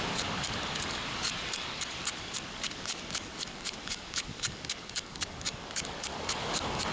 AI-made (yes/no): yes